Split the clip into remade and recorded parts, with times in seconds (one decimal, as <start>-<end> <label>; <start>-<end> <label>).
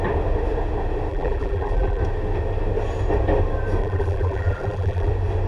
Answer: 0.0-1.1 recorded; 1.1-2.0 remade; 2.0-3.8 recorded; 3.8-5.1 remade; 5.1-5.5 recorded